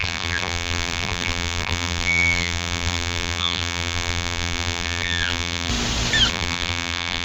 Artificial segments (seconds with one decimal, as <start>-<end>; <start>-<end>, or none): 0.0-5.7; 6.3-7.2